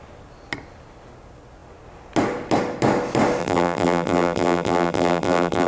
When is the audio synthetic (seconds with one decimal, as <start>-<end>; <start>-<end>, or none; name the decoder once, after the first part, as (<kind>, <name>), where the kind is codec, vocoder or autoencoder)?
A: 3.4-5.7 (vocoder, BigVGAN v2)